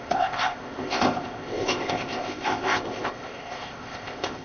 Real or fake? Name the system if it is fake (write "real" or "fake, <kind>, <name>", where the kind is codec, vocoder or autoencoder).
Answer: fake, codec, ZipCodec